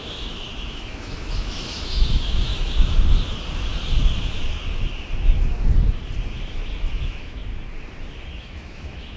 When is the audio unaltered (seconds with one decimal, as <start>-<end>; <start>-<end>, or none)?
2.5-6.9; 7.4-8.4